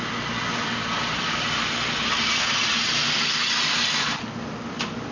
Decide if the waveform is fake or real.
real